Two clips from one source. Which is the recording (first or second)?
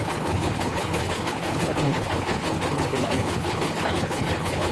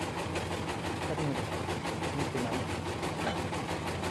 second